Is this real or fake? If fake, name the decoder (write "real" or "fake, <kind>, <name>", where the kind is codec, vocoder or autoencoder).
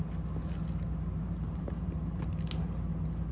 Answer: real